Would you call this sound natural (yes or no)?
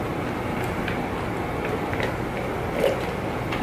yes